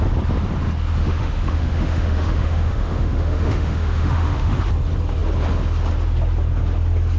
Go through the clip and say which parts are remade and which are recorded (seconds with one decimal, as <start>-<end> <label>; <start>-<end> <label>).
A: 0.0-1.0 recorded; 1.0-4.6 remade; 4.6-7.2 recorded